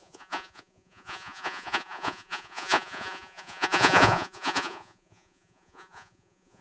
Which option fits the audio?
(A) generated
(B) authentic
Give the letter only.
A